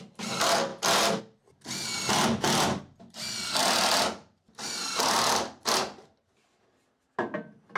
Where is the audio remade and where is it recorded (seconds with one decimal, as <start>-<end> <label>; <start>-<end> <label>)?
0.0-3.6 recorded; 3.6-6.7 remade; 6.7-7.8 recorded